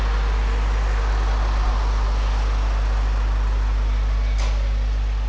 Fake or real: real